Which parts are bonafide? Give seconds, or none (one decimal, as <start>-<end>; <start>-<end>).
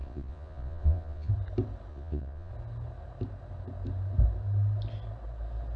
1.3-1.9; 2.5-5.8